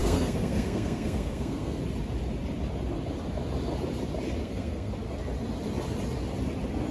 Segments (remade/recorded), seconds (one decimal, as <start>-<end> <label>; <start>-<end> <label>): 0.0-1.8 remade; 1.8-4.4 recorded; 4.4-4.9 remade; 4.9-6.9 recorded